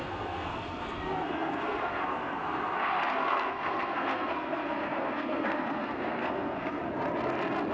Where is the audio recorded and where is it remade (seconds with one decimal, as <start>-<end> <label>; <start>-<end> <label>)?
0.0-6.8 remade; 6.8-7.7 recorded